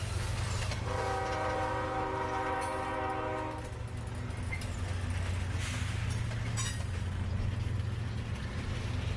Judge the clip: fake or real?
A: real